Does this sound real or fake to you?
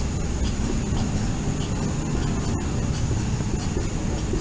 real